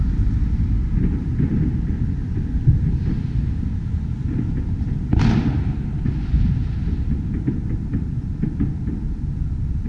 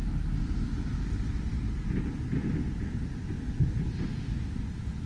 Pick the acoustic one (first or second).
second